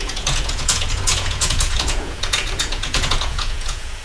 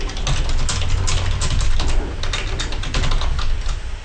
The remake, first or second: first